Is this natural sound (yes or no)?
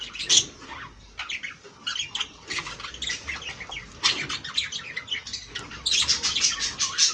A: yes